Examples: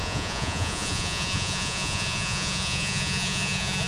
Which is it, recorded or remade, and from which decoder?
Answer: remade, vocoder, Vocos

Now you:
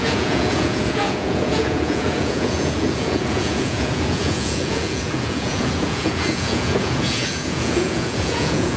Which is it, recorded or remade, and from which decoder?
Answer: remade, vocoder, Vocos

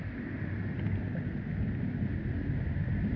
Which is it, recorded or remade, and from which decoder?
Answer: recorded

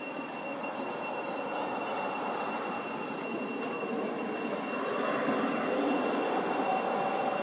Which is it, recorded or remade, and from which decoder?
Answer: recorded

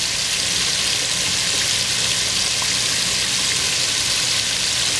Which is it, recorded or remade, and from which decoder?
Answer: recorded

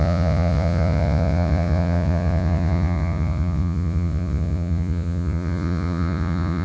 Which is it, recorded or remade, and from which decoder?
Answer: remade, vocoder, Vocos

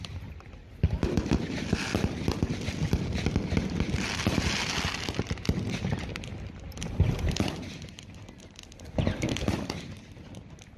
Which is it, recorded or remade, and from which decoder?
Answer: recorded